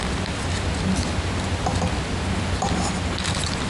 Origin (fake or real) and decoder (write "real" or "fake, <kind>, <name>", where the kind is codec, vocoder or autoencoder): real